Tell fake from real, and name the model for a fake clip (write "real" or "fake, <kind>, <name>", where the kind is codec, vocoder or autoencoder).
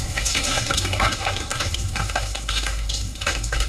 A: fake, codec, SNAC